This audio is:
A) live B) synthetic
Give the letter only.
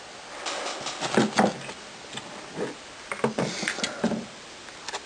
A